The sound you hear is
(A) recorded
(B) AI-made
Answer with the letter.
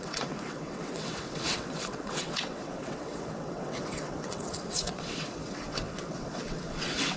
B